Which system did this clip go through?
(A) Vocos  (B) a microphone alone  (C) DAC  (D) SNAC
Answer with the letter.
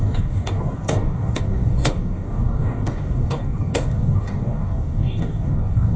C